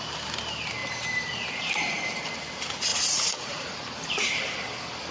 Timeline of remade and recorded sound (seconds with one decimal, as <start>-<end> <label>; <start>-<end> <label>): 0.0-2.9 recorded; 2.9-3.8 remade; 3.8-5.1 recorded